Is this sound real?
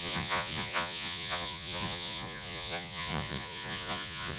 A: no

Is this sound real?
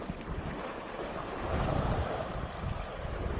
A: yes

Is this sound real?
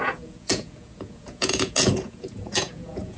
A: no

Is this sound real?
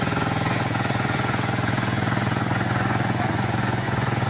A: no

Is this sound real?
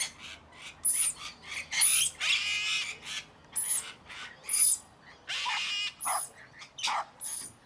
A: yes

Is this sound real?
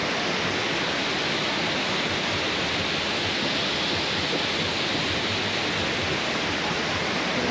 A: yes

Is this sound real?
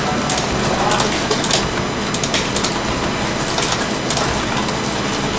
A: yes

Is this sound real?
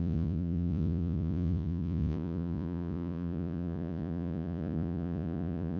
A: no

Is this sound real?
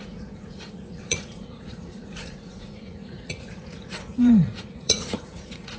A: no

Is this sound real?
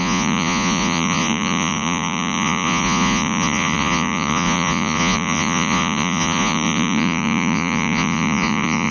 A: no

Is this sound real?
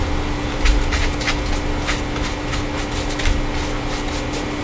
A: yes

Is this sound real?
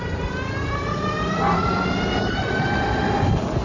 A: yes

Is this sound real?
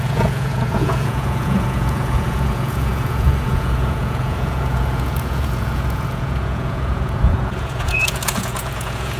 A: no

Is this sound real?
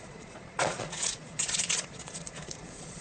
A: no